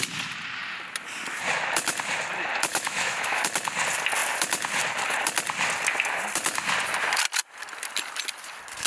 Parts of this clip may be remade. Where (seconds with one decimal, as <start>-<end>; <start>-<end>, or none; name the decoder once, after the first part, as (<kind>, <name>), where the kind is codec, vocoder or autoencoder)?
2.7-3.4 (autoencoder, DAC-VAE)